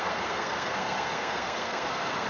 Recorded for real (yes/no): no